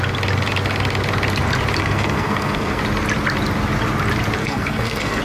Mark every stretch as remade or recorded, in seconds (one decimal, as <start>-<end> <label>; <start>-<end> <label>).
0.0-1.8 recorded; 1.8-2.8 remade; 2.8-4.4 recorded; 4.4-5.2 remade